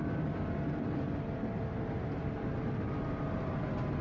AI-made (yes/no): no